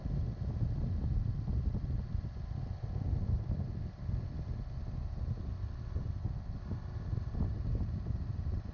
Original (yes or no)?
yes